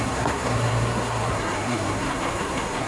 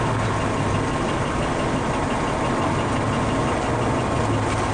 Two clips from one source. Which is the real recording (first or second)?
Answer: second